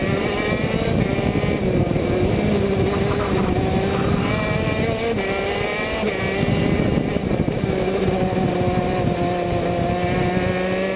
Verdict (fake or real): real